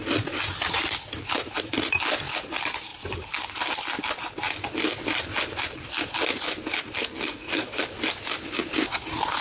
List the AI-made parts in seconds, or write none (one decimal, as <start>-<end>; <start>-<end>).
7.0-7.8